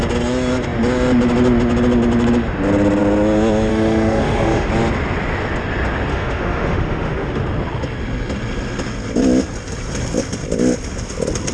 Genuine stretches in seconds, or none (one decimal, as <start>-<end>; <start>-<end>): 0.0-3.7; 4.7-6.1; 7.4-11.5